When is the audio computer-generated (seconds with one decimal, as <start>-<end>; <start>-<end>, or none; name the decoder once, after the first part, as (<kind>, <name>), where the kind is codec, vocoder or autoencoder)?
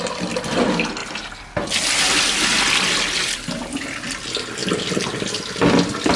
none